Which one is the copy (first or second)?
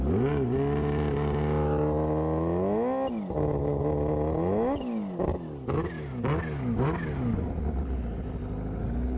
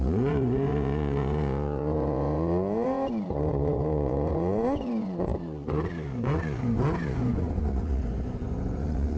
second